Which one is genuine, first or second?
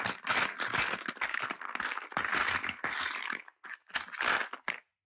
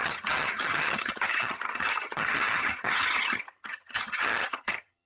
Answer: first